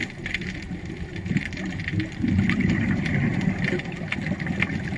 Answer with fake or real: real